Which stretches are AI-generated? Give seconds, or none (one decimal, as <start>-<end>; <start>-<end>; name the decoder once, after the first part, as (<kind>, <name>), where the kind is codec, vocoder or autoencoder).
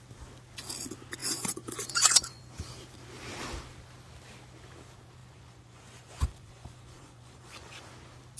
1.2-2.4 (vocoder, Vocos); 5.2-7.9